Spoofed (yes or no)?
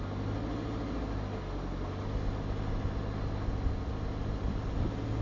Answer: no